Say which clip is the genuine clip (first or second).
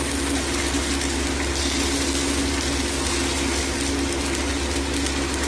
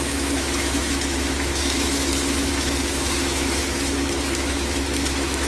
first